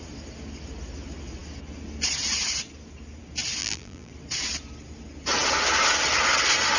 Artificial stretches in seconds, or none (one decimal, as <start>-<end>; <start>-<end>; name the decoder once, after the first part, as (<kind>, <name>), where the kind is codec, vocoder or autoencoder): 3.6-4.1 (vocoder, BigVGAN v2)